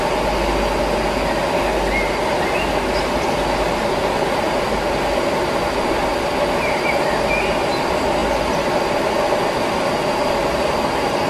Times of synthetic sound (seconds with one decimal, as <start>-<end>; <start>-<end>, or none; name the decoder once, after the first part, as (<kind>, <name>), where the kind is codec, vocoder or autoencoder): none